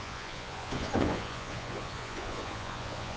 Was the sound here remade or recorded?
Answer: remade